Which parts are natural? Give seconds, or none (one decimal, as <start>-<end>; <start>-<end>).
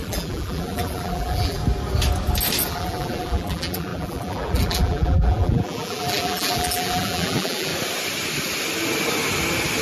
1.6-2.7; 7.7-9.8